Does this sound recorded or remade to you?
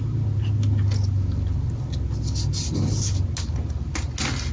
recorded